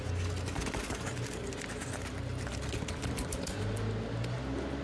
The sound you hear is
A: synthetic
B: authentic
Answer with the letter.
B